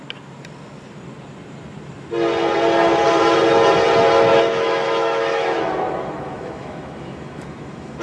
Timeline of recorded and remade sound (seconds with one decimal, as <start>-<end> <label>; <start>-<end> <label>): 0.0-4.3 recorded; 4.3-8.0 remade